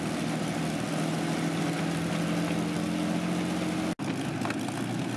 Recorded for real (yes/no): yes